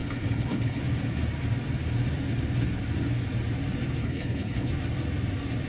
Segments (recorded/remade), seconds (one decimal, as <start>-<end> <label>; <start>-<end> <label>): 0.0-0.8 remade; 0.8-4.0 recorded; 4.0-4.7 remade; 4.7-5.7 recorded